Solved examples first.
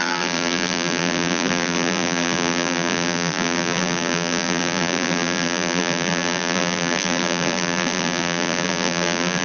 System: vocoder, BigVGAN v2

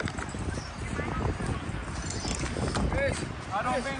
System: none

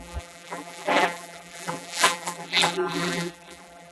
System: vocoder, BigVGAN v2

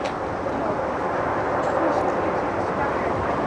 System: none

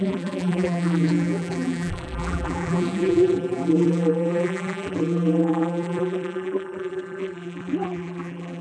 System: vocoder, BigVGAN v2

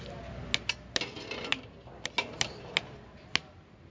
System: none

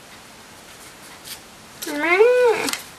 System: vocoder, BigVGAN v2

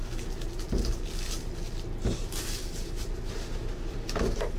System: none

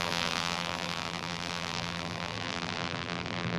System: vocoder, BigVGAN v2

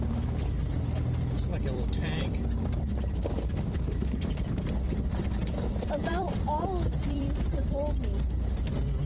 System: vocoder, BigVGAN v2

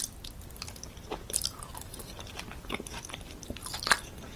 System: vocoder, BigVGAN v2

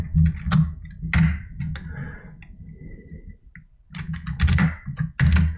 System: none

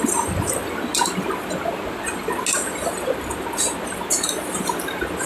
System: none